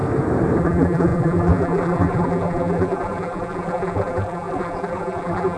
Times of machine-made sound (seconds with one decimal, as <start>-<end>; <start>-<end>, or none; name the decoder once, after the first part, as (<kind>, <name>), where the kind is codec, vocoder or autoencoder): 0.6-5.6 (vocoder, BigVGAN v2)